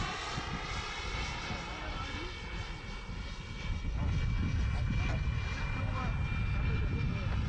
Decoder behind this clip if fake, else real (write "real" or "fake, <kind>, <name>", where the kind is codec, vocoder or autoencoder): real